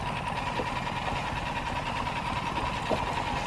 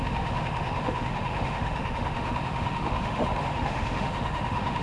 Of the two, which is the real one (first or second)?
first